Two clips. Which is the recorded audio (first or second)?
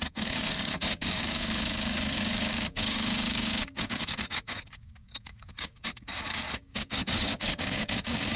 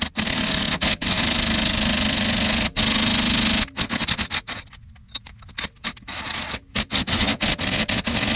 second